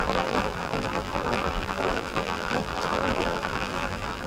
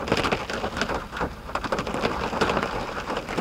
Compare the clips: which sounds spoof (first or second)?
first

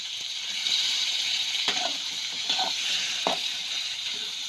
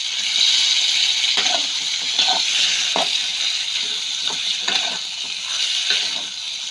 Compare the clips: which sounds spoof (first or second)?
first